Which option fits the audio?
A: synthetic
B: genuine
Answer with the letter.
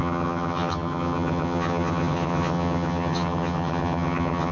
A